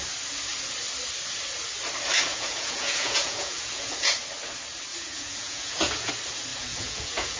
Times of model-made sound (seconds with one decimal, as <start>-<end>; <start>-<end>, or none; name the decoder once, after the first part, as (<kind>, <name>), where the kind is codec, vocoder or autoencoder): 2.3-4.1 (vocoder, Vocos); 4.9-6.1; 6.5-7.4